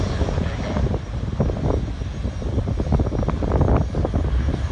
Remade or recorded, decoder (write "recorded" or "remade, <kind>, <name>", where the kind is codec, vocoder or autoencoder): recorded